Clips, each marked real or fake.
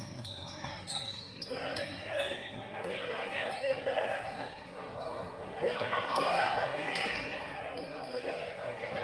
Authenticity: fake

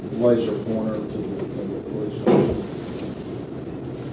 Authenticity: real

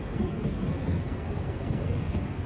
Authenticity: fake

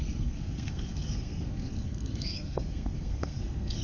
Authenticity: fake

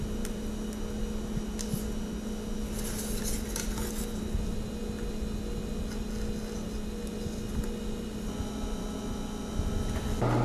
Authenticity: real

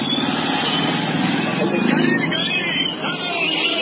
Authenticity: real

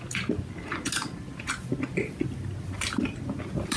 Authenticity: real